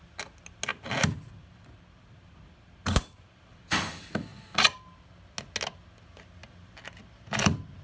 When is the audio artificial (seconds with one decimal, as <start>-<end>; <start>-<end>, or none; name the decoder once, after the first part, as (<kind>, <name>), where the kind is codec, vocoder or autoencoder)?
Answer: 0.7-3.6 (vocoder, BigVGAN v2)